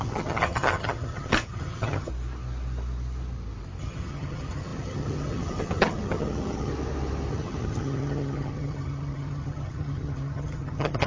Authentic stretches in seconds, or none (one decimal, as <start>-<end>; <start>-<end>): 2.1-3.8; 6.7-7.3